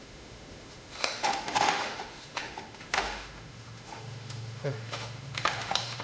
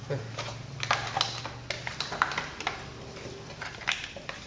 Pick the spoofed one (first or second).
first